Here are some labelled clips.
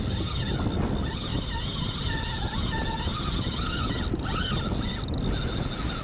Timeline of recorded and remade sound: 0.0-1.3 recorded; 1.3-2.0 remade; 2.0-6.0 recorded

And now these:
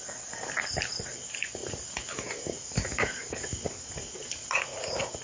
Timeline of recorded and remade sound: 0.0-5.2 recorded

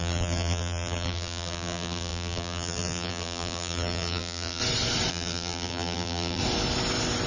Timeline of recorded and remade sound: 0.0-4.6 remade; 4.6-5.1 recorded; 5.1-6.4 remade; 6.4-7.3 recorded

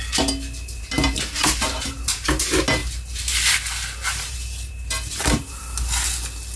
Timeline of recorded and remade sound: 0.0-2.8 recorded; 2.8-3.3 remade; 3.3-4.1 recorded; 4.1-5.6 remade; 5.6-6.6 recorded